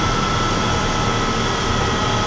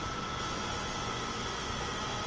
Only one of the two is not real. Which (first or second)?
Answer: second